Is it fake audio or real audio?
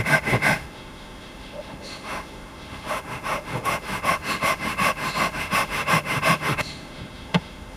fake